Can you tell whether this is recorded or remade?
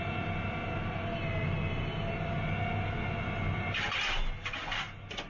recorded